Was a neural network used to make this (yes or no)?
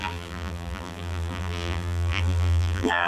yes